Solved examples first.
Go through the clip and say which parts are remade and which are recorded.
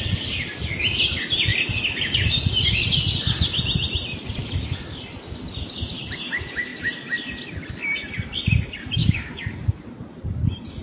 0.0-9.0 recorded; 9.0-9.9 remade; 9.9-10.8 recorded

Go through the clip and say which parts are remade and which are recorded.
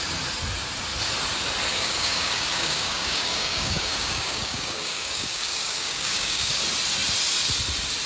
0.0-1.7 recorded; 1.7-6.6 remade; 6.6-8.1 recorded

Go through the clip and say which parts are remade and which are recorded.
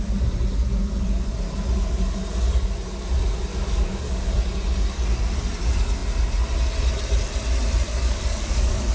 0.0-3.5 recorded; 3.5-4.2 remade; 4.2-7.9 recorded; 7.9-8.9 remade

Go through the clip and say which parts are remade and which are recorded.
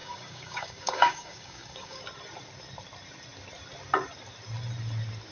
0.0-2.0 remade; 2.0-5.3 recorded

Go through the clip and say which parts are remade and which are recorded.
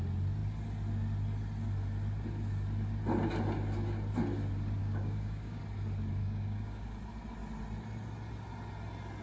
0.0-4.8 recorded; 4.8-5.6 remade; 5.6-6.2 recorded; 6.2-6.9 remade; 6.9-9.2 recorded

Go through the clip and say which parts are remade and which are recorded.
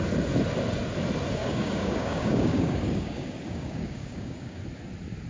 0.0-1.4 recorded; 1.4-4.6 remade; 4.6-5.3 recorded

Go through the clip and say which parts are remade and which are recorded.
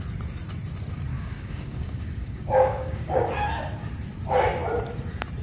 0.0-1.1 recorded; 1.1-3.2 remade; 3.2-5.4 recorded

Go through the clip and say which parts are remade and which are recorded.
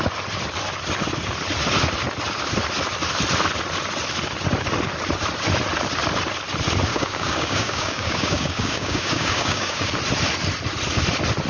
0.0-6.9 recorded; 6.9-9.9 remade; 9.9-11.5 recorded